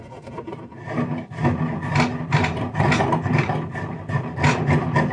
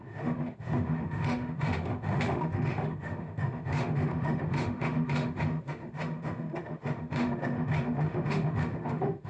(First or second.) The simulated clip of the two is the second